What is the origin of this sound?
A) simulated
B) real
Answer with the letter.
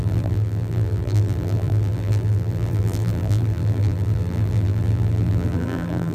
A